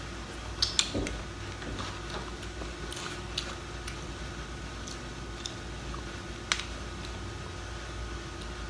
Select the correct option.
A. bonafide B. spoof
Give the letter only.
A